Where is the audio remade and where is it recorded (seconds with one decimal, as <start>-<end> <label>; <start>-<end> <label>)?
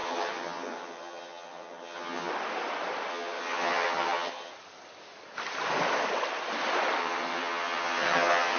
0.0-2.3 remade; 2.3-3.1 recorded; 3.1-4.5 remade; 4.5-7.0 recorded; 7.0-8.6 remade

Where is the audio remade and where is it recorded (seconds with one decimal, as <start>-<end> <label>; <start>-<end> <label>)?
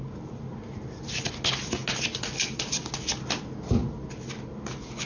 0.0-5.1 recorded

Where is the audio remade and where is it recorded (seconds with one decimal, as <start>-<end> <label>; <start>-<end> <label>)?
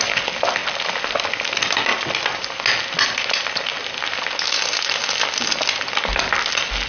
0.0-6.9 recorded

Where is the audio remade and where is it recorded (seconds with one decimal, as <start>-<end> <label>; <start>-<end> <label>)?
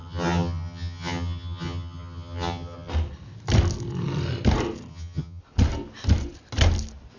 0.0-2.9 remade; 2.9-4.9 recorded; 4.9-5.4 remade; 5.4-7.2 recorded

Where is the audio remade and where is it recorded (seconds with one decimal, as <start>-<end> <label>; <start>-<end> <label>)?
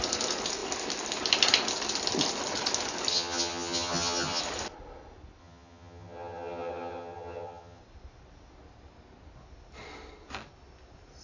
0.0-3.1 recorded; 3.1-4.4 remade; 4.4-5.4 recorded; 5.4-7.8 remade; 7.8-11.2 recorded